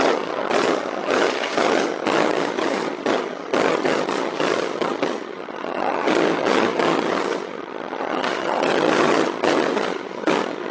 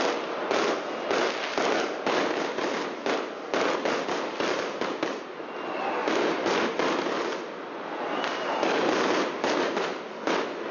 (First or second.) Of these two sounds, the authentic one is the second